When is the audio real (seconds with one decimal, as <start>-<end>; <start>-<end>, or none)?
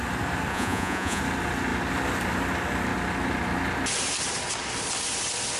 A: 0.0-0.5; 1.2-5.6